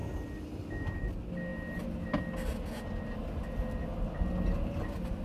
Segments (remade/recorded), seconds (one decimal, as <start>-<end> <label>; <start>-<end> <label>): 0.0-5.2 recorded